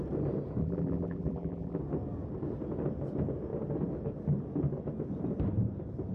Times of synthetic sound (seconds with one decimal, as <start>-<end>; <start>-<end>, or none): 0.6-1.8